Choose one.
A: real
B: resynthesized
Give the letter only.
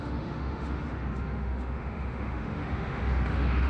B